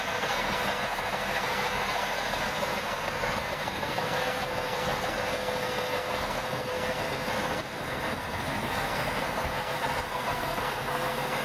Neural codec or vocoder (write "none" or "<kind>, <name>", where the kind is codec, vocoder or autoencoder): codec, SNAC